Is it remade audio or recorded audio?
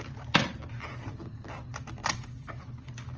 remade